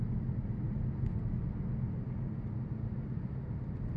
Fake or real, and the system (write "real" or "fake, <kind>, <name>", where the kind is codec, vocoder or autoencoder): real